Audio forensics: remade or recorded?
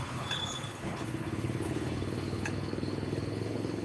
remade